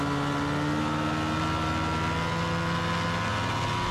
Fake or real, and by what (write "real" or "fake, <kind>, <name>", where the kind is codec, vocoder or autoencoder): real